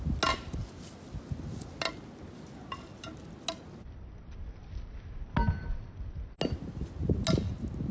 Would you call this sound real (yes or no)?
yes